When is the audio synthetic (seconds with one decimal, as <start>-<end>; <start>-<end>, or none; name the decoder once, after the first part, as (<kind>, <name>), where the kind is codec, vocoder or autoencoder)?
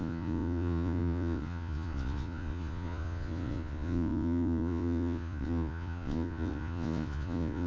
0.0-7.7 (vocoder, Vocos)